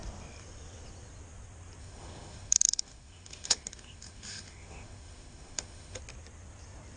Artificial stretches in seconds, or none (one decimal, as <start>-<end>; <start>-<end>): 1.8-6.0